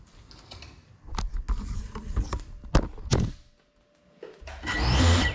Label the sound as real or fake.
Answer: real